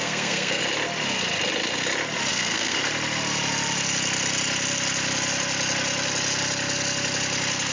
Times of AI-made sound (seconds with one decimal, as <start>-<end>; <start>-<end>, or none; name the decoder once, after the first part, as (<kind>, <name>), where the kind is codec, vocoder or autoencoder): 0.0-0.6 (codec, SNAC); 2.3-2.8